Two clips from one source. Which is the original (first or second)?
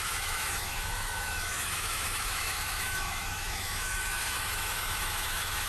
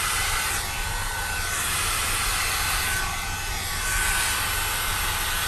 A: second